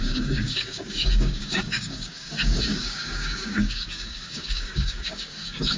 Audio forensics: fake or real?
fake